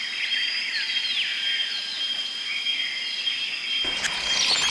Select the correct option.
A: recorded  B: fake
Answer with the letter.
A